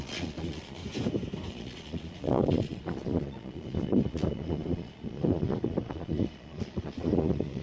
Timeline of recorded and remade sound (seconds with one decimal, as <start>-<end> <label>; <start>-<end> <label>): 0.0-0.8 remade; 0.8-1.5 recorded; 1.5-7.6 remade